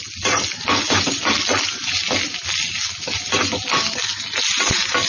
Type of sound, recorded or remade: recorded